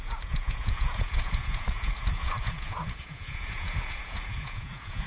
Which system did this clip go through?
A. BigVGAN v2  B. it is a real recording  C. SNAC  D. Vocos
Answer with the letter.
D